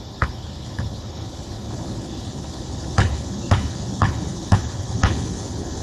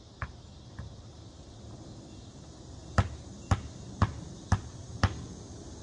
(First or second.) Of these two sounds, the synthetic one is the first